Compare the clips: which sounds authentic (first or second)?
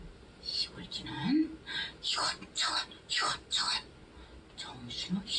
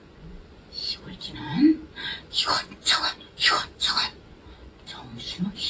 first